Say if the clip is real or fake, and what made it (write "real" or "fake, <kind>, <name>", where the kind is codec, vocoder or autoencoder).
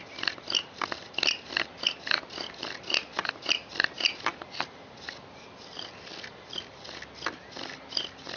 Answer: real